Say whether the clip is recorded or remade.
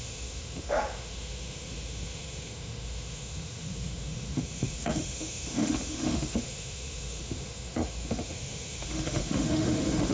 remade